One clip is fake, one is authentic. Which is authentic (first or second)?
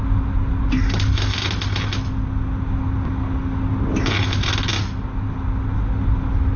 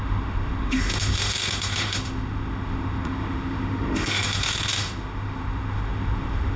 first